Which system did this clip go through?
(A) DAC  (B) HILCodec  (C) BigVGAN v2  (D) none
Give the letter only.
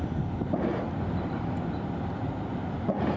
C